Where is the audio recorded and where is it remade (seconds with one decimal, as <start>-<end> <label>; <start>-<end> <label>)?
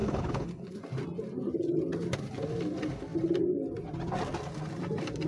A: 0.0-0.8 remade; 0.8-5.3 recorded